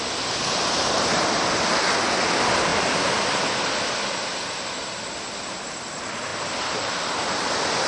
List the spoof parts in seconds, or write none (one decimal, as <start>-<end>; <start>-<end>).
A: none